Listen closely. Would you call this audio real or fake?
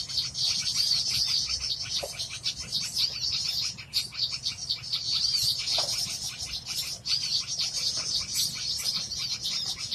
real